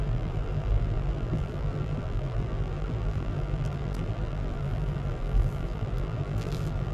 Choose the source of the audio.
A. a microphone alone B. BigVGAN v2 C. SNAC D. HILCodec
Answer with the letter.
B